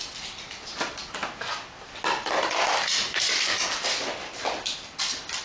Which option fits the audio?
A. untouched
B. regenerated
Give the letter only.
A